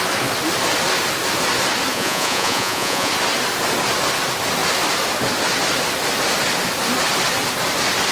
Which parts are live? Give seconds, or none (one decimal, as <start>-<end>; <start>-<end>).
0.0-1.9; 3.1-8.1